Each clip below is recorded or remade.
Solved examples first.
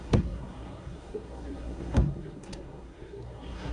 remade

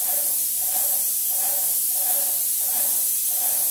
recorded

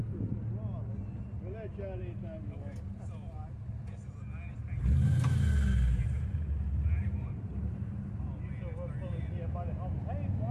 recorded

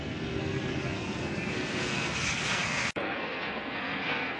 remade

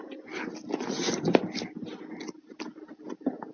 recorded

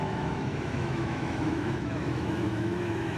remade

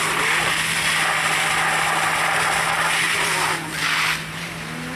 recorded